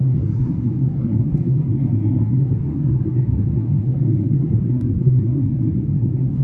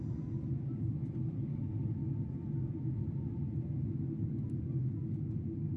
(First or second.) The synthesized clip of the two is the first